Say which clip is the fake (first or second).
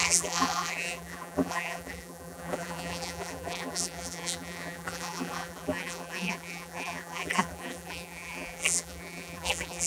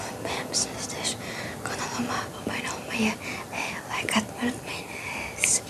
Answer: first